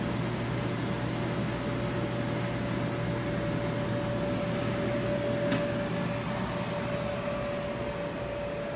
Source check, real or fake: real